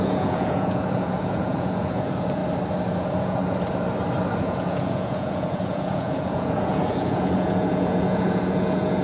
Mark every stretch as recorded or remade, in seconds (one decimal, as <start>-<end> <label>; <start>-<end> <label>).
0.0-2.4 remade; 2.4-3.0 recorded; 3.0-3.4 remade; 3.4-4.4 recorded; 4.4-9.0 remade